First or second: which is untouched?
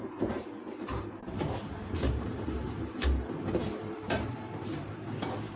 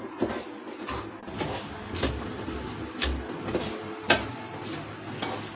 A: second